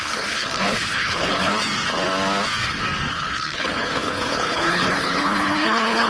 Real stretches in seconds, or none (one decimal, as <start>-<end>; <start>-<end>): 1.5-3.1